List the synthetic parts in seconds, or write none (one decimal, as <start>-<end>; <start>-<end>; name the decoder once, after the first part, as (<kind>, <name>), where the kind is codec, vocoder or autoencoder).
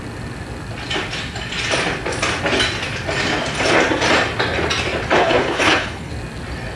5.2-6.1 (codec, HILCodec)